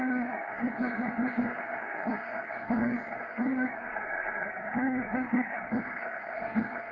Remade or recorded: remade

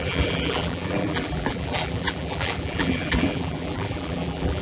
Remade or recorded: remade